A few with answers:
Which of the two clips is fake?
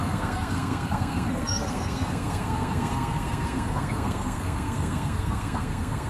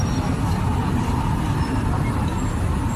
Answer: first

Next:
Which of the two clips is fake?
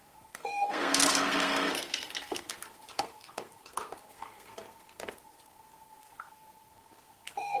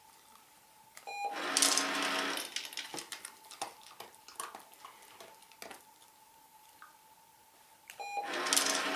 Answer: first